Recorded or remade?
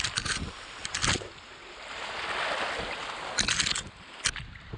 recorded